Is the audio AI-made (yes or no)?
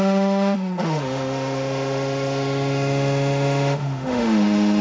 yes